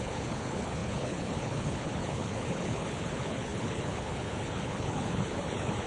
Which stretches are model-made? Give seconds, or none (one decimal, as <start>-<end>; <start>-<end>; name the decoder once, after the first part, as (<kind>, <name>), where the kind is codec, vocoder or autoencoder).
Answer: 0.0-5.9 (codec, HILCodec)